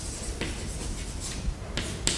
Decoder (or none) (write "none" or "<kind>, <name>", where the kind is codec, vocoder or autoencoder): none